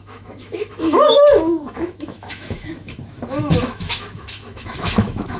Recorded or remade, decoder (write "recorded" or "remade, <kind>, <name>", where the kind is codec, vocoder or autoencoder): remade, autoencoder, DAC-VAE